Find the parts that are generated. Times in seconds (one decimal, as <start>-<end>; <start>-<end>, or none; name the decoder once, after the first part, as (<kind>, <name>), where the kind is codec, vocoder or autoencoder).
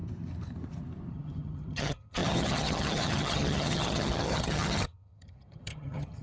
1.1-6.2 (vocoder, HiFi-GAN)